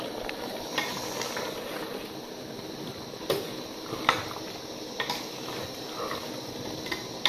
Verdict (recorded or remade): recorded